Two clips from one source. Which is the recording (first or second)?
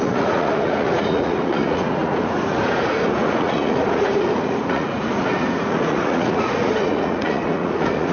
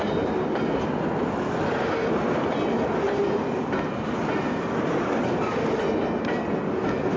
second